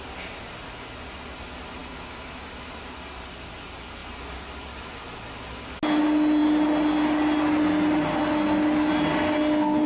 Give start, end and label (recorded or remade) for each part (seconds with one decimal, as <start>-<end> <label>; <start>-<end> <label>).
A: 0.0-1.8 recorded; 1.8-2.5 remade; 2.5-9.9 recorded